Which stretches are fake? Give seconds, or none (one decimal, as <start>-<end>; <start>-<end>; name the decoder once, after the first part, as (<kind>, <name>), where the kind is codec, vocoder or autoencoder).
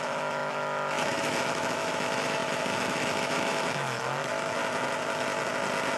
0.0-4.6 (autoencoder, DAC-VAE)